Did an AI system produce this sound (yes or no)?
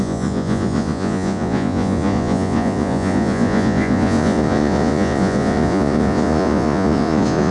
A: yes